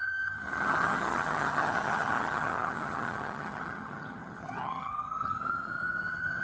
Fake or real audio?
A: fake